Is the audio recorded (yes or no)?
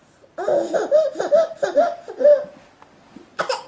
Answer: no